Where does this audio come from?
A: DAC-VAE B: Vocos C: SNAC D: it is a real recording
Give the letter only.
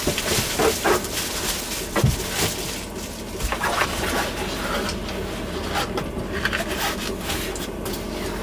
D